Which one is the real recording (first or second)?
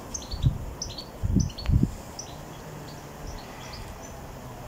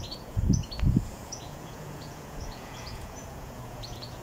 first